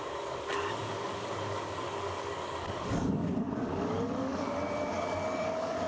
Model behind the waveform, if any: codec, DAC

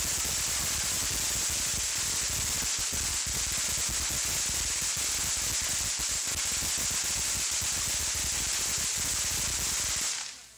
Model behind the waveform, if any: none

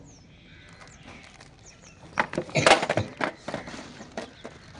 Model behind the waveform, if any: none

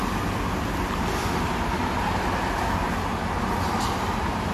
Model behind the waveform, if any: none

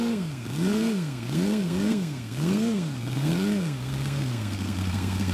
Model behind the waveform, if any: codec, SNAC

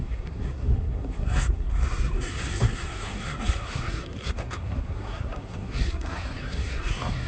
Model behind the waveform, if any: codec, SNAC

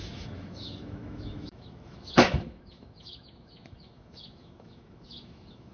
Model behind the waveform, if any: autoencoder, DAC-VAE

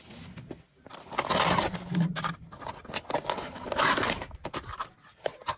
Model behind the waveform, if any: none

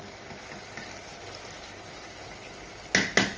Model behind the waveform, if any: none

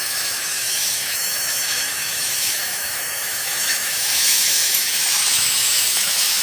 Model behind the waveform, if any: autoencoder, DAC-VAE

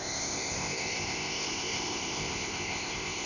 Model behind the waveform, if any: codec, ZipCodec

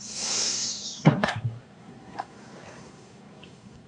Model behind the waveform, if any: codec, SNAC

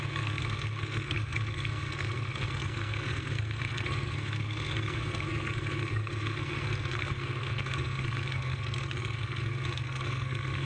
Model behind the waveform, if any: codec, SNAC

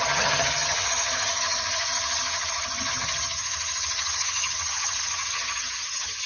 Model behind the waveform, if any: vocoder, HiFi-GAN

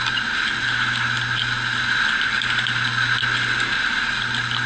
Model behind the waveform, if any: none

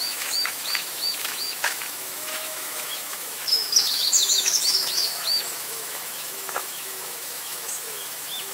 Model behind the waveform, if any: autoencoder, DAC-VAE